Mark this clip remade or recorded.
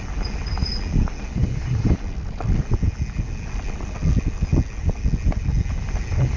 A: recorded